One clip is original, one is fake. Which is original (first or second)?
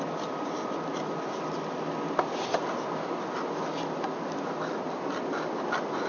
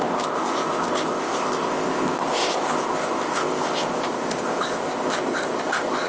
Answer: first